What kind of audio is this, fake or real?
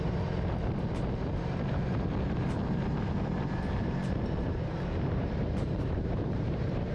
fake